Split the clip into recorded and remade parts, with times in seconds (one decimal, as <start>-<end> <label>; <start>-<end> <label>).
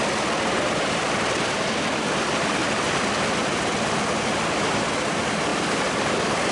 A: 0.0-6.5 recorded